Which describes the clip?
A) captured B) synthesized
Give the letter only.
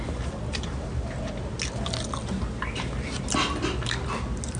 A